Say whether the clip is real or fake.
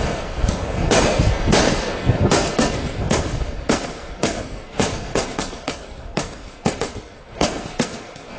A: fake